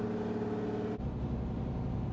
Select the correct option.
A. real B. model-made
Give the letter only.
A